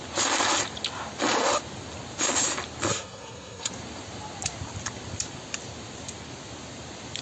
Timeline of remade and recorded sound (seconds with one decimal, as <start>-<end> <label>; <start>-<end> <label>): 0.0-2.9 recorded; 2.9-3.7 remade; 3.7-7.2 recorded